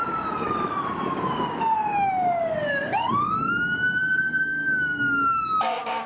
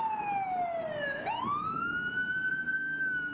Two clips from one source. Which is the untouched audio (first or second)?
second